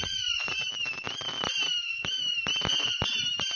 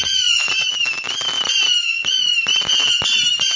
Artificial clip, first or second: first